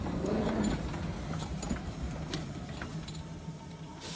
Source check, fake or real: real